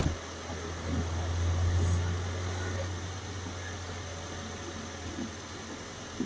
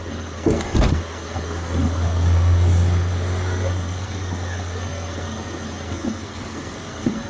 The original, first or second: first